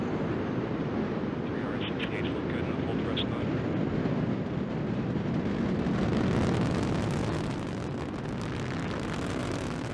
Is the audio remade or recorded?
recorded